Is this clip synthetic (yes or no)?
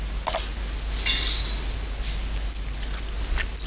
no